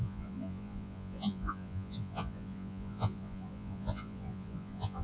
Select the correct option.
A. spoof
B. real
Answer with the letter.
A